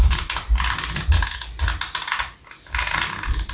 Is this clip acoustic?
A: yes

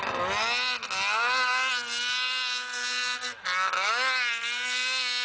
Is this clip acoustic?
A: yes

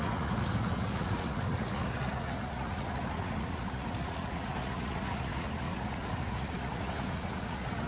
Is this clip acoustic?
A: no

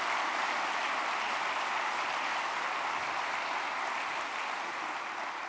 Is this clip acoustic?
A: yes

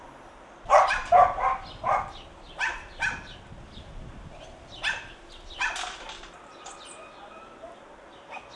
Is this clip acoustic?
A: yes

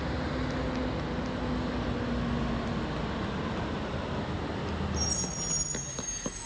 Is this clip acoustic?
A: yes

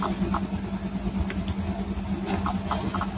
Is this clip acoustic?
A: yes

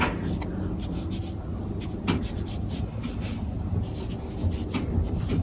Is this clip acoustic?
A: yes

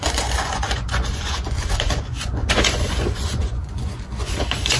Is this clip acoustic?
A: no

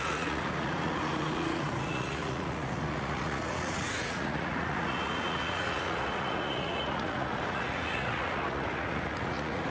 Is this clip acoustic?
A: no